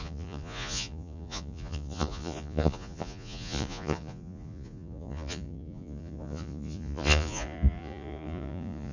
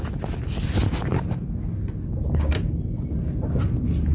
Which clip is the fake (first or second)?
first